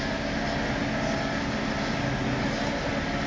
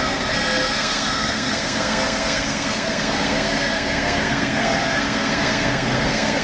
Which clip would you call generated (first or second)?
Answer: second